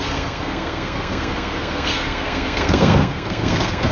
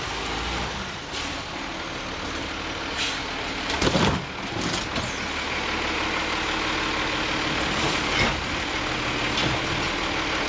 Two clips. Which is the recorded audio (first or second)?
second